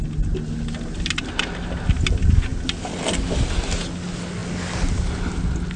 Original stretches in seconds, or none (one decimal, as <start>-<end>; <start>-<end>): 0.0-5.8